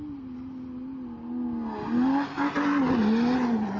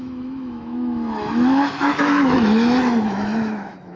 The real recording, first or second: first